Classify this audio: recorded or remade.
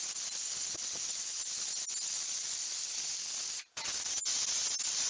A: recorded